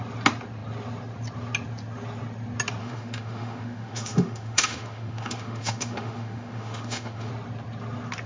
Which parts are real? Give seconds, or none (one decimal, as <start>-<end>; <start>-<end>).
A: 0.0-2.8; 7.3-8.3